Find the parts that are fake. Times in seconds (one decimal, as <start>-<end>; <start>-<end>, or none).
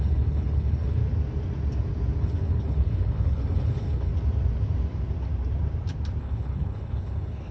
0.0-1.0; 2.2-4.1; 6.2-7.5